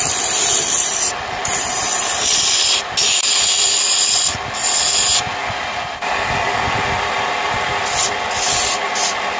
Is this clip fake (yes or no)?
no